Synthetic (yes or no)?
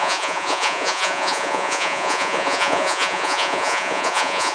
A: yes